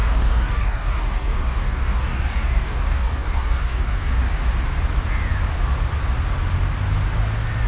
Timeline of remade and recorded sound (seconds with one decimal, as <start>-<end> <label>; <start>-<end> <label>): 0.0-4.1 remade; 4.1-7.7 recorded